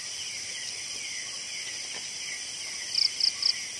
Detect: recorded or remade recorded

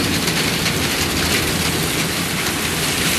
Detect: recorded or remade recorded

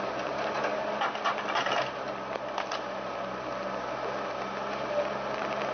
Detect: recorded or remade recorded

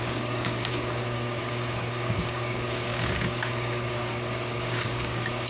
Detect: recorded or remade remade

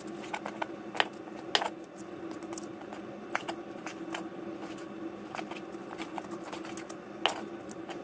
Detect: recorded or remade recorded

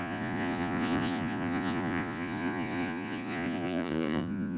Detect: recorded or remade remade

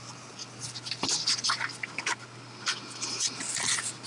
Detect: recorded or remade recorded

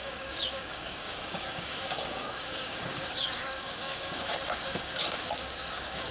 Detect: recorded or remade remade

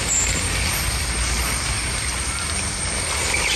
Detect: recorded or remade recorded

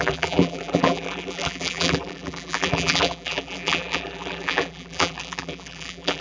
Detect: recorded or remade remade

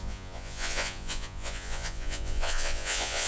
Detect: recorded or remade remade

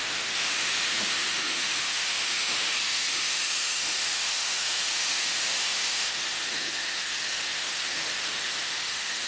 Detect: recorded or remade remade